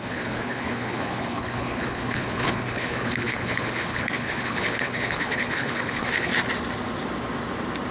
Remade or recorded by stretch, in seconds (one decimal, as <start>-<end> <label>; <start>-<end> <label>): 0.0-6.3 remade; 6.3-7.9 recorded